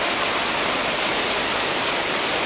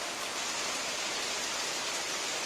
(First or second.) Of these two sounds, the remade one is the first